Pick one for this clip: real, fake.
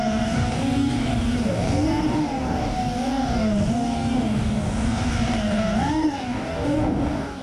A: fake